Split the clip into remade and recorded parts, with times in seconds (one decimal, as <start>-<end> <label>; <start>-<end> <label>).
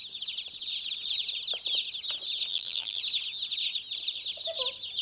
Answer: 0.0-2.5 recorded; 2.5-3.0 remade; 3.0-5.0 recorded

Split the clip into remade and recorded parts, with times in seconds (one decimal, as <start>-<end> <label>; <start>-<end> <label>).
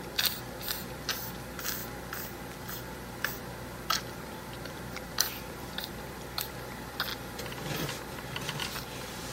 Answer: 0.0-9.3 remade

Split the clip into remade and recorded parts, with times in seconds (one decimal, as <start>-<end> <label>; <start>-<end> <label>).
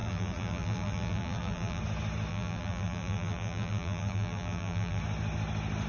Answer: 0.0-1.8 remade; 1.8-2.3 recorded; 2.3-5.0 remade; 5.0-5.9 recorded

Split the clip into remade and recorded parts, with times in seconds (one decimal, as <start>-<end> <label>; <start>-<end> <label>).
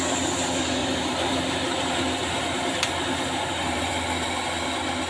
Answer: 0.0-0.8 recorded; 0.8-3.9 remade; 3.9-5.1 recorded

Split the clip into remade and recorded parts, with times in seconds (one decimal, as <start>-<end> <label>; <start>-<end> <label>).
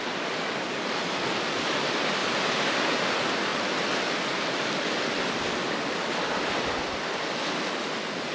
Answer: 0.0-2.2 recorded; 2.2-2.9 remade; 2.9-8.3 recorded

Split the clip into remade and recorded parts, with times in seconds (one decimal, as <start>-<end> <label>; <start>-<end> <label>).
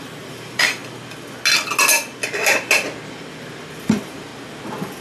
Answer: 0.0-0.8 remade; 0.8-3.8 recorded; 3.8-4.3 remade; 4.3-5.0 recorded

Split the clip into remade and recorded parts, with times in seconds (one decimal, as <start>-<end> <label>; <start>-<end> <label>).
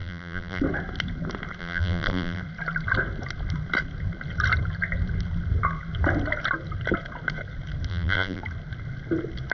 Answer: 0.0-0.6 remade; 0.6-1.6 recorded; 1.6-2.4 remade; 2.4-7.9 recorded; 7.9-8.4 remade; 8.4-9.5 recorded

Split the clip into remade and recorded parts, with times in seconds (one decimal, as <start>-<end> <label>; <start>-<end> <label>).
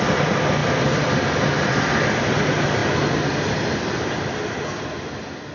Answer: 0.0-5.5 recorded